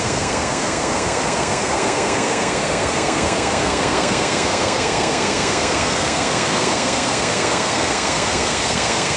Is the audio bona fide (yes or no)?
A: no